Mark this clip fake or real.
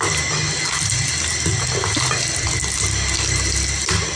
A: real